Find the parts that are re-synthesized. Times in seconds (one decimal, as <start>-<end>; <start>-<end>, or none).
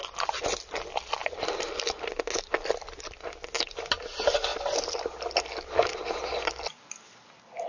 none